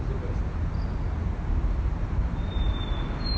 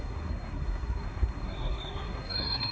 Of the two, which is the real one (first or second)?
first